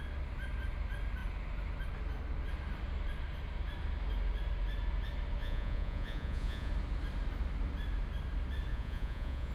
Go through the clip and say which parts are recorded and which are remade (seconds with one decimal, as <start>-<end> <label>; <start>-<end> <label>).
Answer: 0.0-5.4 recorded; 5.4-6.7 remade; 6.7-8.7 recorded; 8.7-9.5 remade